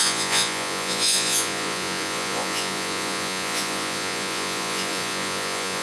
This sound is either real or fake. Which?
fake